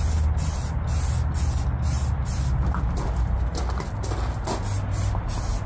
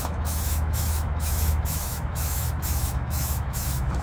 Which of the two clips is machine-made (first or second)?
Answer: second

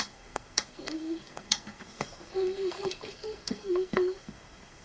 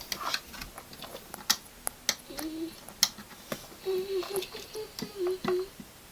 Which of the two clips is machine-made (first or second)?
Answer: first